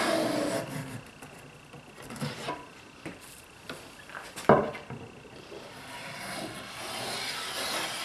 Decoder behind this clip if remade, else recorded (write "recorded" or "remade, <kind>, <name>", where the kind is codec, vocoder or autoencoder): recorded